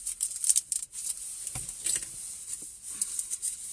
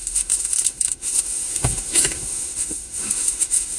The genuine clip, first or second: first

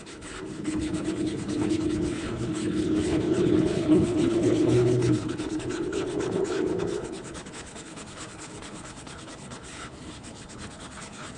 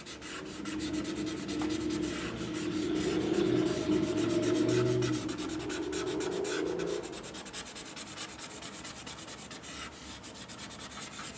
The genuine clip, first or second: second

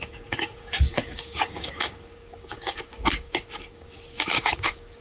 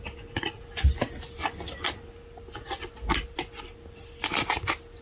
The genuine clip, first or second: second